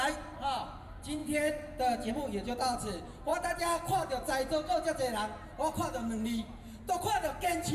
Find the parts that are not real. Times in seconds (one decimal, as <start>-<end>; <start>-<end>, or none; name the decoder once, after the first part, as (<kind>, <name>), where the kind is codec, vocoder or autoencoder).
none